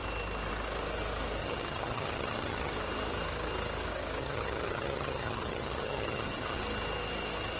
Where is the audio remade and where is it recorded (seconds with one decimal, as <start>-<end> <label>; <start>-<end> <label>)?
0.0-1.4 recorded; 1.4-2.7 remade; 2.7-4.2 recorded; 4.2-6.6 remade; 6.6-7.6 recorded